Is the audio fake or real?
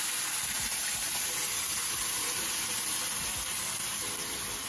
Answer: real